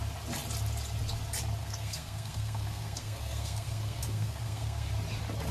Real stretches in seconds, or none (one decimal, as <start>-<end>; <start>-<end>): 0.0-1.6; 4.9-5.5